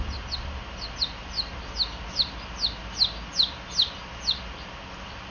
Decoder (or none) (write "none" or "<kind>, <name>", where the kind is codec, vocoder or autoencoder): none